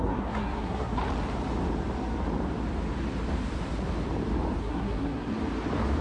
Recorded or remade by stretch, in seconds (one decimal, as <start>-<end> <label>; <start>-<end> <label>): 0.0-1.0 remade; 1.0-4.6 recorded; 4.6-5.3 remade; 5.3-6.0 recorded

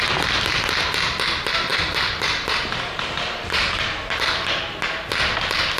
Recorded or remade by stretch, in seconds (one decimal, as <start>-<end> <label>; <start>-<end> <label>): 0.0-1.7 recorded; 1.7-4.8 remade; 4.8-5.8 recorded